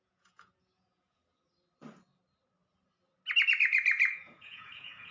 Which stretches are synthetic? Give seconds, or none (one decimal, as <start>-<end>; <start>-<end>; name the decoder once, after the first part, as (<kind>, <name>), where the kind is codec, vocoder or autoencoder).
0.0-1.2 (vocoder, Vocos); 4.1-5.1